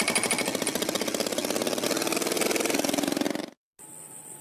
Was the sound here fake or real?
real